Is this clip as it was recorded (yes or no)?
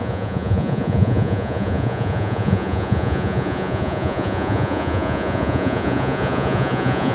no